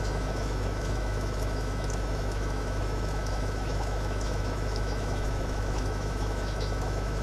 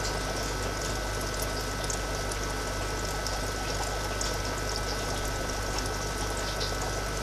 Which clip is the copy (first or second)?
first